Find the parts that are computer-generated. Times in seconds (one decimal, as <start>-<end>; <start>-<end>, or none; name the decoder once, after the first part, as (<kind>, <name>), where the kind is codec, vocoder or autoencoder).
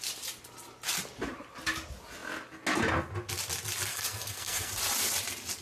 3.9-4.7 (codec, SNAC)